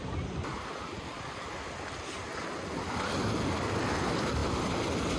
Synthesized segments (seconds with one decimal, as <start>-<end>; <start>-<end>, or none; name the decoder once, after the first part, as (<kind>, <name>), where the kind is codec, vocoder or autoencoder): none